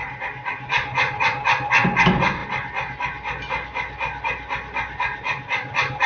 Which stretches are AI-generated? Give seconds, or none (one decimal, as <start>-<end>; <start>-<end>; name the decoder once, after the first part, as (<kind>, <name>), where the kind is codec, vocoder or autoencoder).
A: none